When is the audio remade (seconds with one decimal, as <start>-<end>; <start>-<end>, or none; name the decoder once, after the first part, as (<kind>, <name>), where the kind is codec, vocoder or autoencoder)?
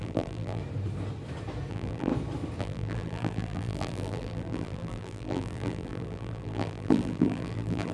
0.0-0.6 (vocoder, BigVGAN v2); 1.7-2.1; 2.6-7.9